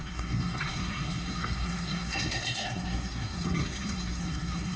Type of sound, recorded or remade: remade